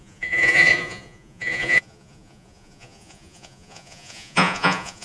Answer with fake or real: fake